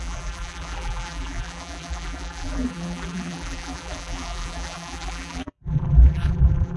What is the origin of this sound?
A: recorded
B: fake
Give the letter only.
B